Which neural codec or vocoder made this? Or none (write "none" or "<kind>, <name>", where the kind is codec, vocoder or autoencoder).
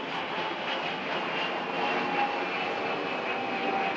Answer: none